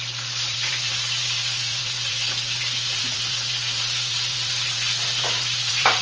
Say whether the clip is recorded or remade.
remade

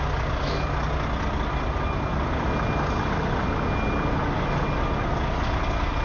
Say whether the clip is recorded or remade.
recorded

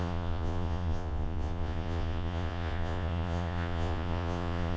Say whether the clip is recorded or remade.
remade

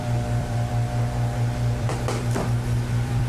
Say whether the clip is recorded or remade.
remade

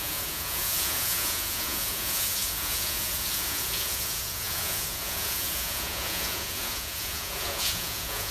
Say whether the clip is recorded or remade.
remade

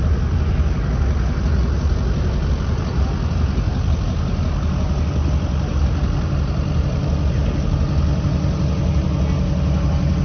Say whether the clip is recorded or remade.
recorded